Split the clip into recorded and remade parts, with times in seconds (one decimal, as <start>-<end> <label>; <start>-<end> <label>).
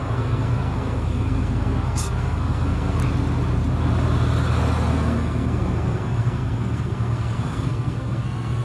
0.0-3.0 remade; 3.0-4.9 recorded; 4.9-8.6 remade